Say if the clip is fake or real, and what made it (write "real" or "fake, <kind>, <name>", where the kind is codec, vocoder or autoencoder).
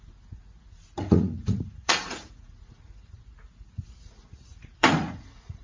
fake, vocoder, Vocos